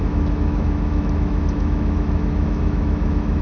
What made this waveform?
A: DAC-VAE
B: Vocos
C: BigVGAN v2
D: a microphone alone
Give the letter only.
A